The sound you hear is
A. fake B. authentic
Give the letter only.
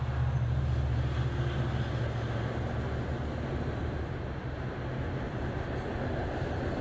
B